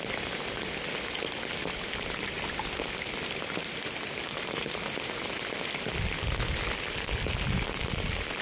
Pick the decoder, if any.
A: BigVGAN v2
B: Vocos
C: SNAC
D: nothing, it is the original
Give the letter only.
D